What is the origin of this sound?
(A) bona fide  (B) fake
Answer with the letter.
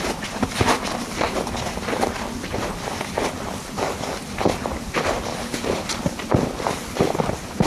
A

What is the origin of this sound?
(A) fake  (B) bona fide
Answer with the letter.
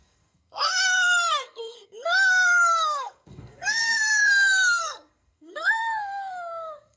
A